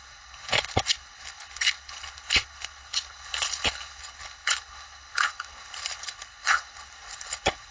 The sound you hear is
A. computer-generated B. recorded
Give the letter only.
A